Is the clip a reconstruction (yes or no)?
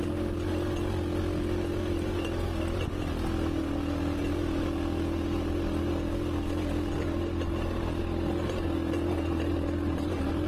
no